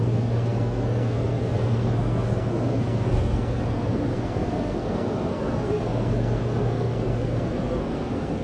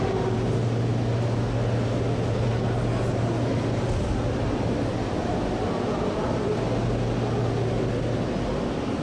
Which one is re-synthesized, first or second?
first